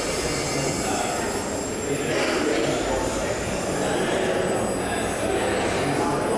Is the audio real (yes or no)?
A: yes